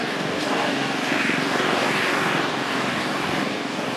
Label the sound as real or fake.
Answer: fake